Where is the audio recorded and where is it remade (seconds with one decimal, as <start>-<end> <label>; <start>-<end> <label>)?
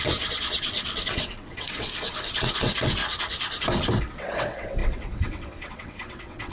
0.0-3.0 remade; 3.0-4.1 recorded; 4.1-6.5 remade